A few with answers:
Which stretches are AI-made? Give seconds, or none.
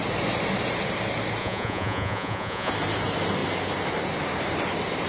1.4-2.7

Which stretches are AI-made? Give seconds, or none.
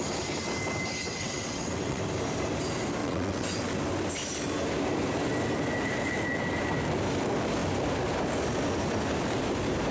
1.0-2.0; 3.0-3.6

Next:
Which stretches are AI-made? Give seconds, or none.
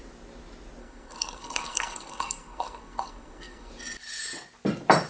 0.8-3.7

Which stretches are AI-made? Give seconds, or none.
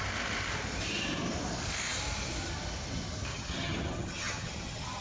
3.3-5.0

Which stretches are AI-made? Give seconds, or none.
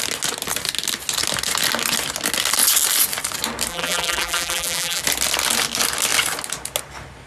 3.7-5.0